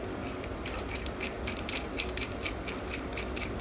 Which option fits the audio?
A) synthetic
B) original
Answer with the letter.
B